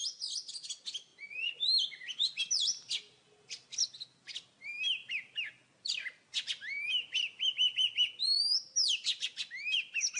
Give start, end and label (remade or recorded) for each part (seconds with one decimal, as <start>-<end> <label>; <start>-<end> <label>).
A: 0.0-10.2 recorded